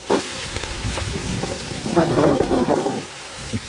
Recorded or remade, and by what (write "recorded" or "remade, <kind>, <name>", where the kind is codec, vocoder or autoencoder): remade, codec, SNAC